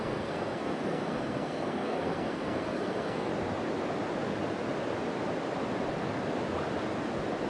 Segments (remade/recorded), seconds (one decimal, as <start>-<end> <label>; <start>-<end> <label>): 0.0-3.3 remade; 3.3-7.5 recorded